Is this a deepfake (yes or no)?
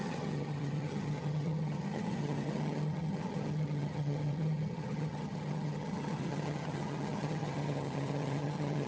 yes